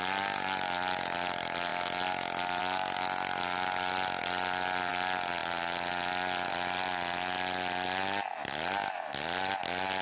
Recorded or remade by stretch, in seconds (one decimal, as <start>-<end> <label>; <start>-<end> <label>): 0.0-10.0 recorded